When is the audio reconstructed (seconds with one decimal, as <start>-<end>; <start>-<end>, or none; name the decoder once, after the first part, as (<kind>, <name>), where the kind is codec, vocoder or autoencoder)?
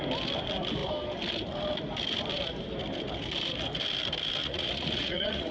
4.4-5.5 (vocoder, Vocos)